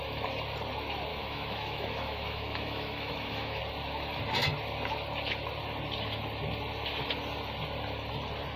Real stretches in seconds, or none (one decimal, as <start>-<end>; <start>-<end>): 0.0-1.1; 3.6-8.6